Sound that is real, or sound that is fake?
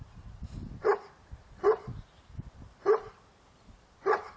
real